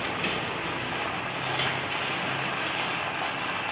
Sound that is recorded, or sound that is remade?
recorded